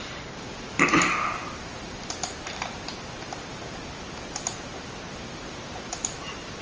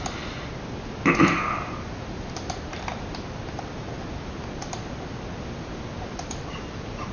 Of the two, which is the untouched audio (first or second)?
second